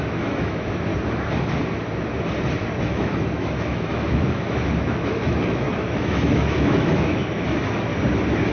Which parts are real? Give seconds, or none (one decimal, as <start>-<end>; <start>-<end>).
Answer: 0.9-2.8; 7.9-8.5